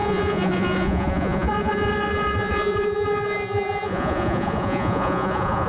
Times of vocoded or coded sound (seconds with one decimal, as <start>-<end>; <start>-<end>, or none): 0.0-5.7